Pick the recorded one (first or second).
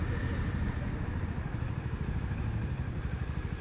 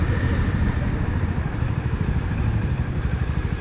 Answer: first